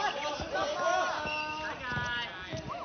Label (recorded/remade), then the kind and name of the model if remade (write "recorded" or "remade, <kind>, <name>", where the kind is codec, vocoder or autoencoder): recorded